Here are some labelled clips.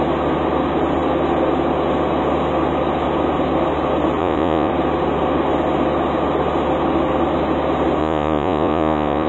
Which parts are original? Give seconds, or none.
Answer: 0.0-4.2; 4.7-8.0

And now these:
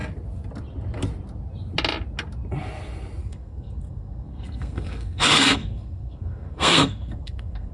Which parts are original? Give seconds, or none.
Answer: 0.0-3.2

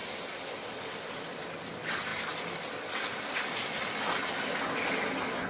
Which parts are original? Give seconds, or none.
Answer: 0.9-5.5

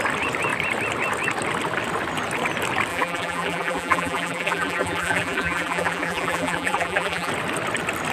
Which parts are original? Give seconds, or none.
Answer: 0.0-2.9; 7.3-8.1